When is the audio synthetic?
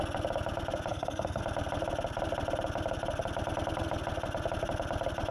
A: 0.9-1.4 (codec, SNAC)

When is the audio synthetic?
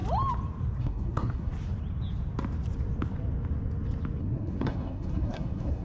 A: 0.8-1.5 (codec, SNAC); 4.2-5.8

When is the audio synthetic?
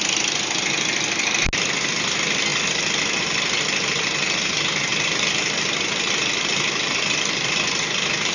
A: none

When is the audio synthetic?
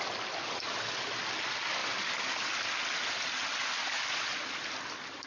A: none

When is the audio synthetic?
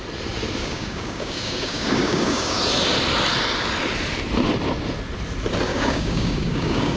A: 0.6-2.6 (codec, DAC); 5.7-7.0